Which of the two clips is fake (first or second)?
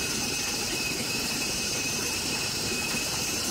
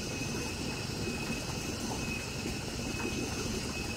first